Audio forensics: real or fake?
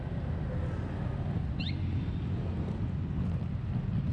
real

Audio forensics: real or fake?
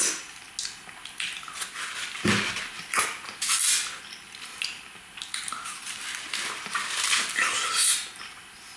real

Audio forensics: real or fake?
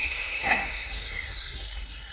fake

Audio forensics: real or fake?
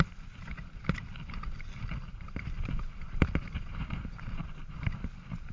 real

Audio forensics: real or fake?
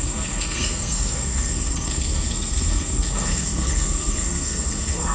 fake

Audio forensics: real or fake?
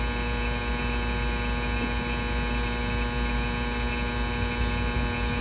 real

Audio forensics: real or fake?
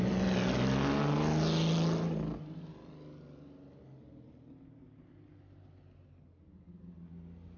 real